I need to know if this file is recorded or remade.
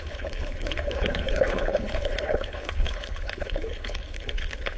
remade